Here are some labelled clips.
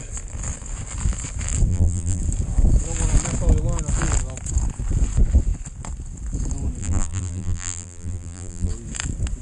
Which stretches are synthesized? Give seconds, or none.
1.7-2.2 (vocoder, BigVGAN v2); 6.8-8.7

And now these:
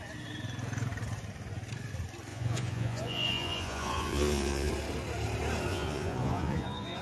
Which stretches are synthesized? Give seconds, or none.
2.3-4.7 (vocoder, Vocos); 5.7-7.0